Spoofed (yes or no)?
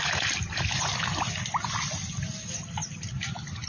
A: no